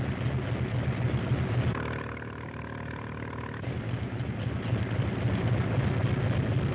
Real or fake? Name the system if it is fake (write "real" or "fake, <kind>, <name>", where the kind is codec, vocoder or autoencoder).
real